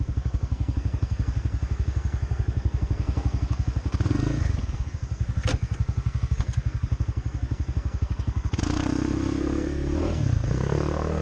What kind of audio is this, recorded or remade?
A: remade